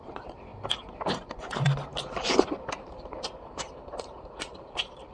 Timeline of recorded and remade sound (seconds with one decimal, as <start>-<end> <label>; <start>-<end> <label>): 0.0-5.1 remade